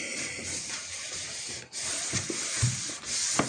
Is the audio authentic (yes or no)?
yes